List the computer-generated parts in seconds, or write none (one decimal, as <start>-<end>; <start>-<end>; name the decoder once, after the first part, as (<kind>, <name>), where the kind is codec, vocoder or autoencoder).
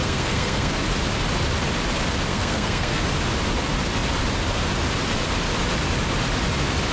0.0-0.8 (codec, SNAC); 2.3-3.0